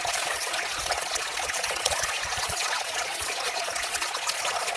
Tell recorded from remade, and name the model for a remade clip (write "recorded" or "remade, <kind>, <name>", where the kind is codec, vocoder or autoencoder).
remade, vocoder, Vocos